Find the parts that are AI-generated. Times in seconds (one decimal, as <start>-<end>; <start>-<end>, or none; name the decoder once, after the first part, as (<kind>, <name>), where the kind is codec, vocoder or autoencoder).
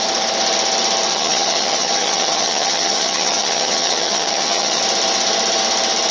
1.1-4.8 (vocoder, HiFi-GAN)